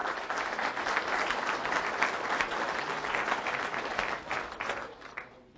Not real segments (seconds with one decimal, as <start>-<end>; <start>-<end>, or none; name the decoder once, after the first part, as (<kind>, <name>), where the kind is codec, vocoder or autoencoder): 0.0-2.8 (vocoder, BigVGAN v2)